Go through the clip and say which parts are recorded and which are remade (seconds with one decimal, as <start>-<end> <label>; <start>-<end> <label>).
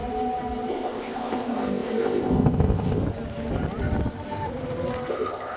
0.0-0.7 recorded; 0.7-3.0 remade; 3.0-5.1 recorded; 5.1-5.6 remade